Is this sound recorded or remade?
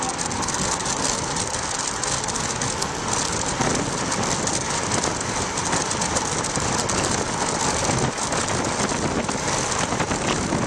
recorded